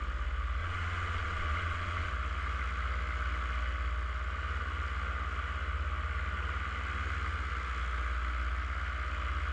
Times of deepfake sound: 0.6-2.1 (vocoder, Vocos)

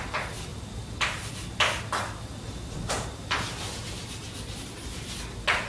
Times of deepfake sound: none

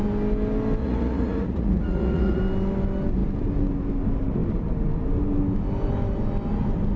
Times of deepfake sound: 0.8-2.4 (vocoder, Vocos)

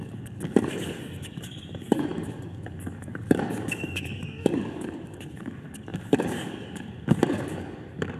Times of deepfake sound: 0.0-8.2 (codec, DAC)

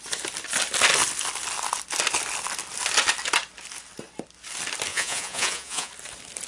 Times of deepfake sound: 4.9-5.9 (vocoder, Vocos)

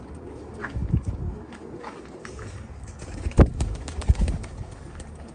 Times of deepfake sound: 0.0-5.3 (codec, DAC)